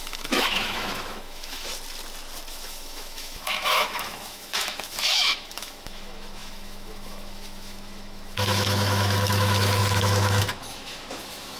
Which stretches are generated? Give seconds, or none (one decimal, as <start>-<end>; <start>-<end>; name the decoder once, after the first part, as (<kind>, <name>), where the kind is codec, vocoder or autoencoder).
0.0-1.7 (autoencoder, DAC-VAE); 2.5-11.6